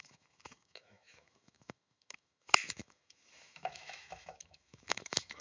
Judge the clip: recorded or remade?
remade